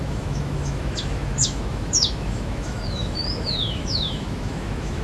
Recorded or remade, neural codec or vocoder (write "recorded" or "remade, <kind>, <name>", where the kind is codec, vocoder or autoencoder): remade, autoencoder, DAC-VAE